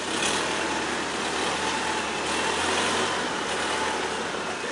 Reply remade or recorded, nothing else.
recorded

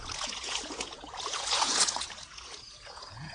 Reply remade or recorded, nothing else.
remade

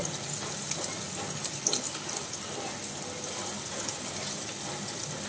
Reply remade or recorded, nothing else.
recorded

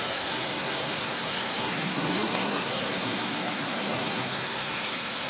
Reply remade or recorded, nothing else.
remade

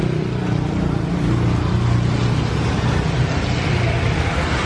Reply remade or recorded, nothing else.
recorded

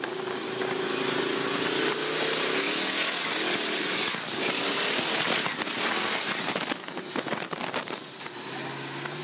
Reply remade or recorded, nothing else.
recorded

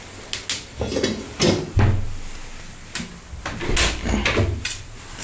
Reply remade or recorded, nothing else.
recorded